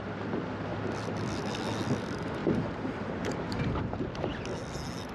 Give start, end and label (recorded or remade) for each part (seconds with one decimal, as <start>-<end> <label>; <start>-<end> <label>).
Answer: 0.0-2.4 recorded; 2.4-4.1 remade; 4.1-5.1 recorded